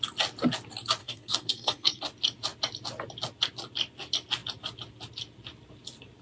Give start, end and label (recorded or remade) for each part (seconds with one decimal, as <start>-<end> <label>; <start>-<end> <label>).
0.0-1.0 recorded; 1.0-2.0 remade; 2.0-6.2 recorded